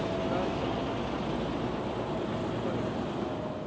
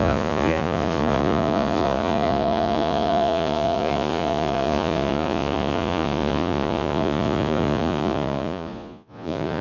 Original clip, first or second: first